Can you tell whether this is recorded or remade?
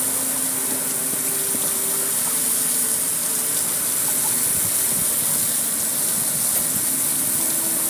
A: recorded